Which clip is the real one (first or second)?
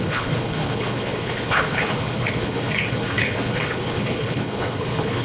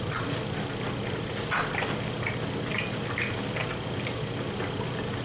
second